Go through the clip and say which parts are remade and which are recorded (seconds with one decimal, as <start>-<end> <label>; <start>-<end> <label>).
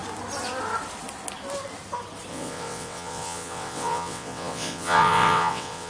0.0-2.3 recorded; 2.3-5.9 remade